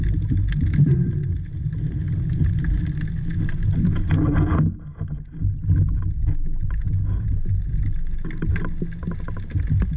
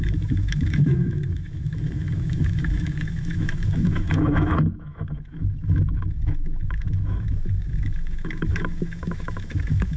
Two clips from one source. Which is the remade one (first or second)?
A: second